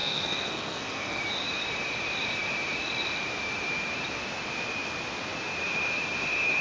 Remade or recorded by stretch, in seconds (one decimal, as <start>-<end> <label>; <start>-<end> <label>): 0.0-1.2 remade; 1.2-6.6 recorded